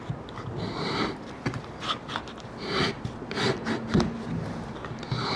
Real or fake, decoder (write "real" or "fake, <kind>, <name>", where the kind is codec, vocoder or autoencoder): real